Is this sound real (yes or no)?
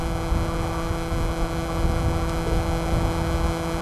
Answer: yes